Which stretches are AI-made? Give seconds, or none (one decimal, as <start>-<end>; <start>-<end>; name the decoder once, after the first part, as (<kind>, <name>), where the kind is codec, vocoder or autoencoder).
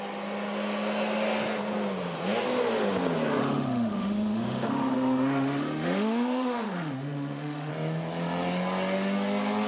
3.4-7.7 (autoencoder, DAC-VAE)